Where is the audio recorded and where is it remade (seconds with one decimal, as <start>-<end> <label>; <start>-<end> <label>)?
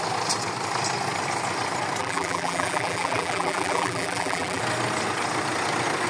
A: 0.0-2.0 recorded; 2.0-4.6 remade; 4.6-6.1 recorded